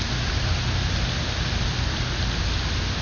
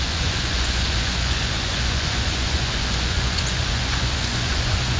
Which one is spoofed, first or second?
second